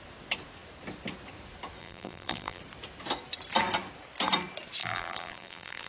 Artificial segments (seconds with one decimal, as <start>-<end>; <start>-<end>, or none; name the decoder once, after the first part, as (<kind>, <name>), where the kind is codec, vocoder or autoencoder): 1.8-2.6 (vocoder, BigVGAN v2); 4.8-5.9